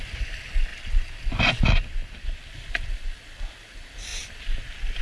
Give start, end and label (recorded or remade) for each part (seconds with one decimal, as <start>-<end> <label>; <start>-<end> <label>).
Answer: 0.0-5.0 recorded